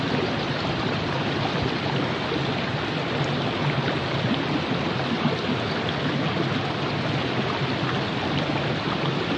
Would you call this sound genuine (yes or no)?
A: yes